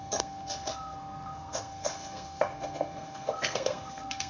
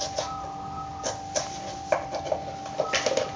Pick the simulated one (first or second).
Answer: first